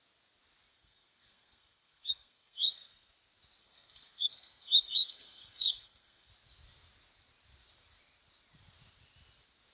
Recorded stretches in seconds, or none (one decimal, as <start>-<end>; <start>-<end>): 0.0-0.7; 3.1-3.6; 6.3-9.7